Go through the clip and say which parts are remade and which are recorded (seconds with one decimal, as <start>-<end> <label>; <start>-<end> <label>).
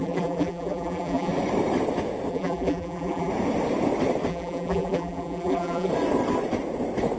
0.0-1.3 remade; 1.3-2.3 recorded; 2.3-3.3 remade; 3.3-4.3 recorded; 4.3-5.9 remade; 5.9-7.2 recorded